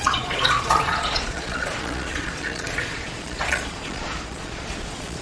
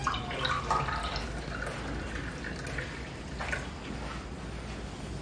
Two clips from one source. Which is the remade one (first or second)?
first